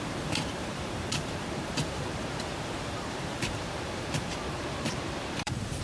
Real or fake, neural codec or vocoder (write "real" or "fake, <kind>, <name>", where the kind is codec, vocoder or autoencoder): fake, vocoder, BigVGAN v2